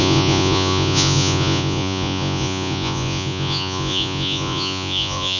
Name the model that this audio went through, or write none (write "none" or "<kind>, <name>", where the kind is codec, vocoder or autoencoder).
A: vocoder, Vocos